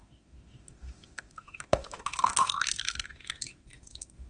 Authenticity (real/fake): fake